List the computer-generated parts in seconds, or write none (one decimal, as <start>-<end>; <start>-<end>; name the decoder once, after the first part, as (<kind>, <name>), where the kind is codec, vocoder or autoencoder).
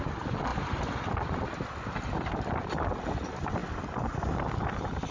none